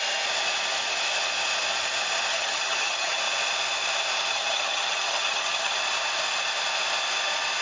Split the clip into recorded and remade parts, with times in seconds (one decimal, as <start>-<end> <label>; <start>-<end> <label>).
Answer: 0.0-2.3 recorded; 2.3-3.2 remade; 3.2-4.3 recorded; 4.3-5.7 remade; 5.7-7.6 recorded